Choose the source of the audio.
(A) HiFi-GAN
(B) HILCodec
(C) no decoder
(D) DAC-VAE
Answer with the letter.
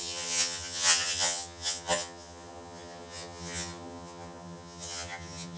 A